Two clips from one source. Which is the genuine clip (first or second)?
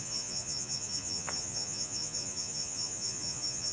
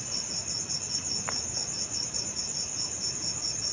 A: second